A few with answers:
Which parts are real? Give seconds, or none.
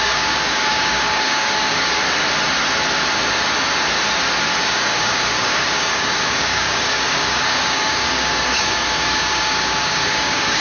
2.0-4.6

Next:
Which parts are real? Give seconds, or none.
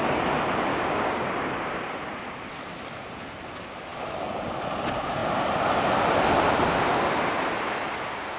0.0-0.7; 1.3-8.4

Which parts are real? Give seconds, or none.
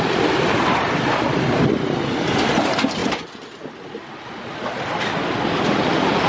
0.0-6.3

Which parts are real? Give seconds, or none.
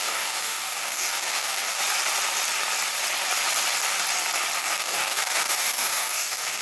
1.8-4.6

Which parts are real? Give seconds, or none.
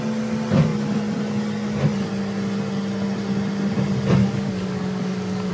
0.0-4.2